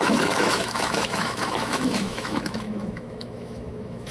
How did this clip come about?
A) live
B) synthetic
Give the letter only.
B